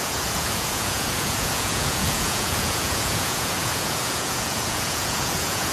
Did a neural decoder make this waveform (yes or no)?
yes